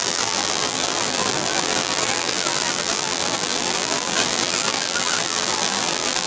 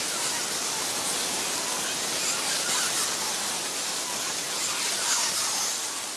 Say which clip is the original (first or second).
second